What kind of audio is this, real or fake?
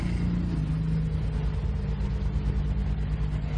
real